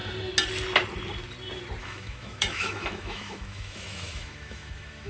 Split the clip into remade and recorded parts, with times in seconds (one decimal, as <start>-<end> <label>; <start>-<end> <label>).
0.0-1.8 recorded; 1.8-5.1 remade

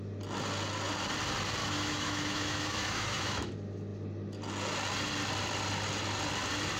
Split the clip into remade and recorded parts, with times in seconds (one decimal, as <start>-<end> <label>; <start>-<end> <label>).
0.0-1.6 recorded; 1.6-3.5 remade; 3.5-6.8 recorded

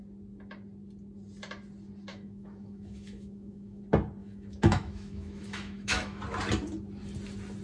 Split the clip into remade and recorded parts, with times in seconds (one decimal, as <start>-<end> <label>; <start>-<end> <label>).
0.0-2.1 recorded; 2.1-3.8 remade; 3.8-4.2 recorded; 4.2-6.2 remade; 6.2-7.6 recorded

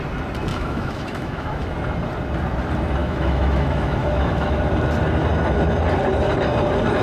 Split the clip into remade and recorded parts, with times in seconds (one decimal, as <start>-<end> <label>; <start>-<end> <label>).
0.0-0.5 recorded; 0.5-1.7 remade; 1.7-3.0 recorded; 3.0-4.6 remade; 4.6-7.0 recorded

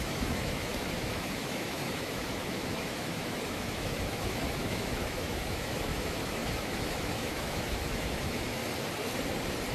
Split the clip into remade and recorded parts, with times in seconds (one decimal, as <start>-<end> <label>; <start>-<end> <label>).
0.0-8.6 remade; 8.6-9.7 recorded